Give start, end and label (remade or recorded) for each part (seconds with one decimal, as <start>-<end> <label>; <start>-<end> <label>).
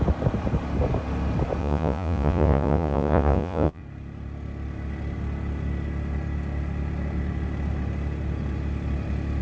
0.0-1.6 recorded; 1.6-3.8 remade; 3.8-9.4 recorded